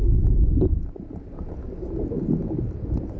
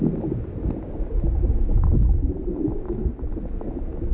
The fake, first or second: first